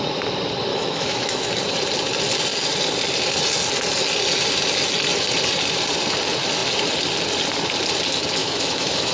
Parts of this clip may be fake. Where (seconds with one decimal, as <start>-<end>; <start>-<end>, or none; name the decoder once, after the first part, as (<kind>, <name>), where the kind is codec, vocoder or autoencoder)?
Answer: 0.7-1.5 (autoencoder, DAC-VAE); 8.4-9.1